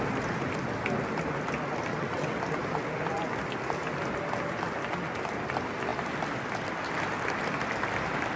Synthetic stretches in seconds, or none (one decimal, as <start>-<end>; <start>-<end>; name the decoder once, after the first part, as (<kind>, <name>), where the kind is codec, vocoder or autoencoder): 1.9-2.4 (vocoder, WaveNeXt)